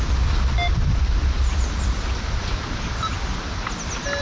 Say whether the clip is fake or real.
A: real